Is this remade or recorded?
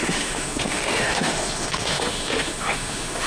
remade